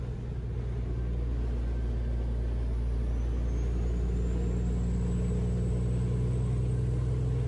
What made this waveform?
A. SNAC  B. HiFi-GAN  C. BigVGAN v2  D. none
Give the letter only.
D